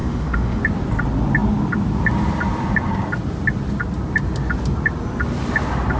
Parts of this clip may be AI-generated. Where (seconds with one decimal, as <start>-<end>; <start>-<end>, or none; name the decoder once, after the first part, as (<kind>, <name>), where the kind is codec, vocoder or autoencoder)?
0.0-0.6 (autoencoder, DAC-VAE)